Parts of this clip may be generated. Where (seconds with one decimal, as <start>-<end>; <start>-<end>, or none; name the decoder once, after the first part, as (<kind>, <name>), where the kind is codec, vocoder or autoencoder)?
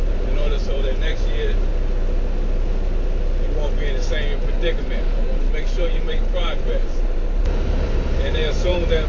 0.0-1.7 (vocoder, BigVGAN v2); 4.8-9.1